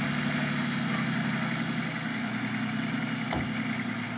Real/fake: real